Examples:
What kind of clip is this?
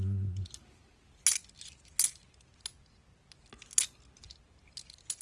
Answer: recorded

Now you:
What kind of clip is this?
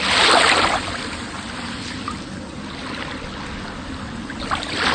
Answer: recorded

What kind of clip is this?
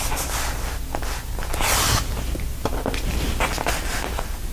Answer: recorded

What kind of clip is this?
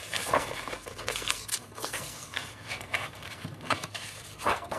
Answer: remade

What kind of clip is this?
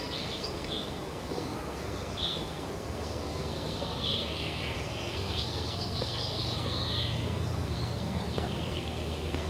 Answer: remade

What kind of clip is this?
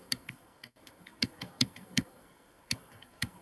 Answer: remade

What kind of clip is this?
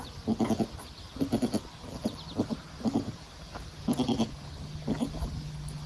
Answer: recorded